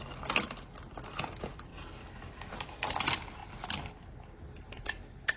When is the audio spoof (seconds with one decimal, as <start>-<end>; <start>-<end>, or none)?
none